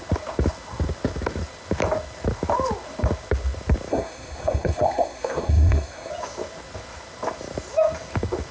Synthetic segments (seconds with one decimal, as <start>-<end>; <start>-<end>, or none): 3.9-6.1